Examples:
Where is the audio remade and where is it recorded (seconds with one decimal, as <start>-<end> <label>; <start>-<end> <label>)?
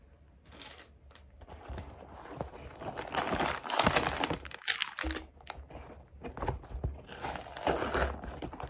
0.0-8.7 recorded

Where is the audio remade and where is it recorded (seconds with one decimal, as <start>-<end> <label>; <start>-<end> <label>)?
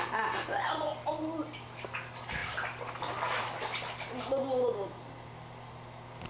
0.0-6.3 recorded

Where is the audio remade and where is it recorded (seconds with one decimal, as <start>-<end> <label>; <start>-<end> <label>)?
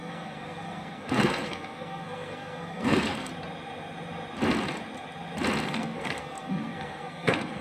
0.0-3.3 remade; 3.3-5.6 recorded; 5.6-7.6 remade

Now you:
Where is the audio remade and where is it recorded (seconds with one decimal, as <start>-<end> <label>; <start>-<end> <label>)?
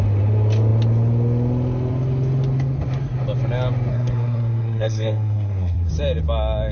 0.0-3.9 recorded; 3.9-5.9 remade; 5.9-6.7 recorded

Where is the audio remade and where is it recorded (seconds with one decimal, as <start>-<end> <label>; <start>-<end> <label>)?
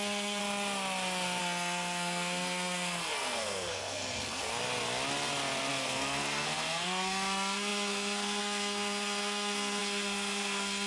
0.0-0.4 remade; 0.4-1.4 recorded; 1.4-4.5 remade; 4.5-5.7 recorded; 5.7-10.9 remade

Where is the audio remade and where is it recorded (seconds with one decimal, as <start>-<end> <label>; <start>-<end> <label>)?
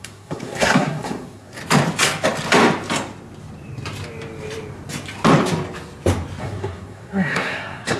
0.0-1.6 remade; 1.6-6.4 recorded; 6.4-8.0 remade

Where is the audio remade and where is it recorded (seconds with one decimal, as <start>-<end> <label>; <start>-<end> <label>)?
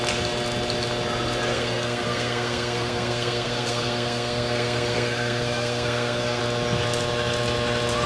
0.0-1.5 recorded; 1.5-6.4 remade; 6.4-8.1 recorded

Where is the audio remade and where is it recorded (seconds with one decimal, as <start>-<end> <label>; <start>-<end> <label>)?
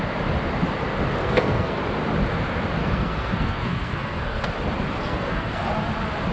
0.0-1.2 recorded; 1.2-1.8 remade; 1.8-2.8 recorded; 2.8-4.5 remade; 4.5-5.0 recorded; 5.0-5.7 remade; 5.7-6.3 recorded